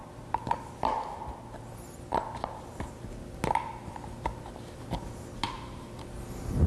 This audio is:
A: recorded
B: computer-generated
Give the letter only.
A